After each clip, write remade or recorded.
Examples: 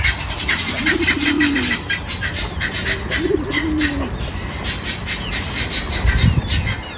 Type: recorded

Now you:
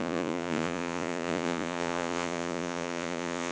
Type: remade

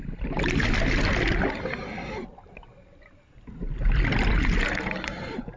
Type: recorded